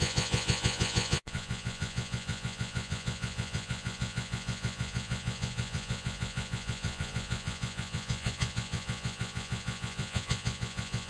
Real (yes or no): no